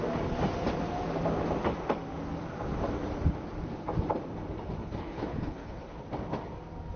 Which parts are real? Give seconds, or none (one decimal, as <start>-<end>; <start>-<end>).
0.0-4.8; 6.0-7.0